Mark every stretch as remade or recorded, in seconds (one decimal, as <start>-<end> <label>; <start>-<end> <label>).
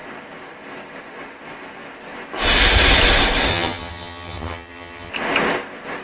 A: 0.0-3.5 recorded; 3.5-5.1 remade; 5.1-6.0 recorded